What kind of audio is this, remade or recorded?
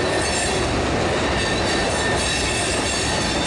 recorded